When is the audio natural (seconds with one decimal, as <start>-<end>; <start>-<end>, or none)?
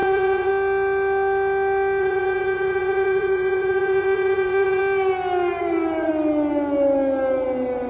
0.5-2.0; 4.8-5.6; 6.1-7.9